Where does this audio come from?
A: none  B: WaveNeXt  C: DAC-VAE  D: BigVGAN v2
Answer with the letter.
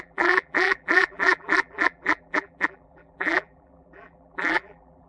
D